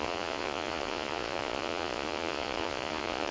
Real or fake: fake